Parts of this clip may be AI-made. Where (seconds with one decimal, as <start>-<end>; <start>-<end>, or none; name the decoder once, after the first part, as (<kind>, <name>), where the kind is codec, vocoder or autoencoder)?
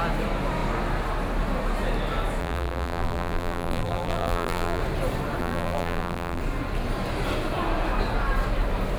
2.4-4.8 (vocoder, BigVGAN v2); 5.4-6.4